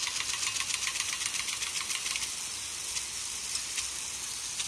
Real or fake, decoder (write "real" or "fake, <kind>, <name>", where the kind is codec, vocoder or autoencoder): real